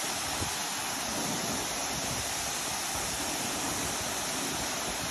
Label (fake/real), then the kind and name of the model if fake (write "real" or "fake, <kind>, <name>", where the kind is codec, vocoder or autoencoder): real